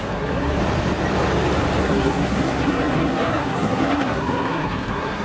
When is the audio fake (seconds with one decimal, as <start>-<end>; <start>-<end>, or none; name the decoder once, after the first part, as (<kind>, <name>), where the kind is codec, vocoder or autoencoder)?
0.0-0.6 (codec, SNAC); 1.8-5.2